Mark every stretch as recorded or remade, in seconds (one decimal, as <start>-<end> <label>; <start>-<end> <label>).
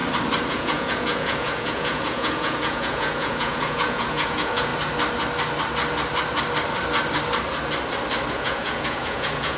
0.0-0.5 recorded; 0.5-4.7 remade; 4.7-8.3 recorded; 8.3-9.6 remade